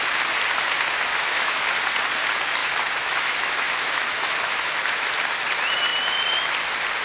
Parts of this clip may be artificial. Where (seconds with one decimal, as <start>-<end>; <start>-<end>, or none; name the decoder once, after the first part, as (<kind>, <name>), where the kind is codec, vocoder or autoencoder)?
1.1-1.7 (autoencoder, DAC-VAE); 2.6-5.1